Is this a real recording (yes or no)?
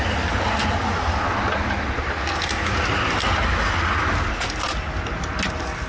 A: yes